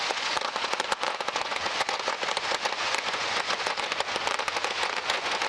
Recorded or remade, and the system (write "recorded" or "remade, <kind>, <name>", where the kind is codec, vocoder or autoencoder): remade, vocoder, Vocos